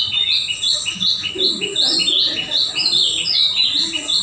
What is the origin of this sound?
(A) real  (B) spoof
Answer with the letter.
A